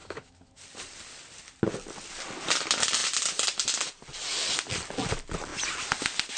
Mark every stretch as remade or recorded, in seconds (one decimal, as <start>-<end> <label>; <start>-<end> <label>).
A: 0.0-0.6 remade; 0.6-6.4 recorded